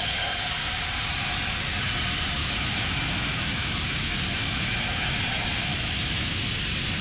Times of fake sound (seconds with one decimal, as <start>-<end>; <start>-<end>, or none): 2.4-5.2; 5.7-6.4